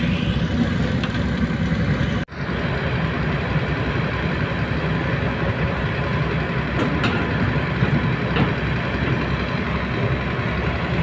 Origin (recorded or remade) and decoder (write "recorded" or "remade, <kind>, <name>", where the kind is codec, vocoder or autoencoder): recorded